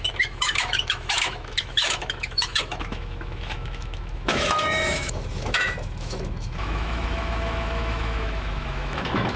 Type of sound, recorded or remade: remade